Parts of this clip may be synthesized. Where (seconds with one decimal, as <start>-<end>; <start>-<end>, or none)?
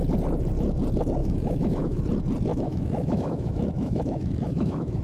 1.2-2.0; 2.5-5.0